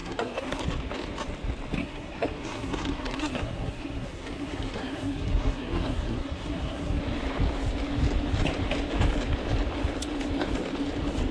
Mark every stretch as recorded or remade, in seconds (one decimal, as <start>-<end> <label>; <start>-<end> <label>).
0.0-0.6 remade; 0.6-1.8 recorded; 1.8-7.0 remade; 7.0-11.3 recorded